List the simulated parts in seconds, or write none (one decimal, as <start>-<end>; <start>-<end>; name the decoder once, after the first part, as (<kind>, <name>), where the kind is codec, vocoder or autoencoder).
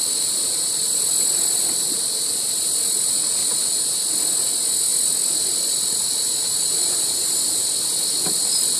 none